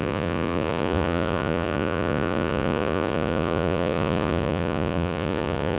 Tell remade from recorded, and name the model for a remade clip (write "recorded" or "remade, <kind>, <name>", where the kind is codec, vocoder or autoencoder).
remade, vocoder, Vocos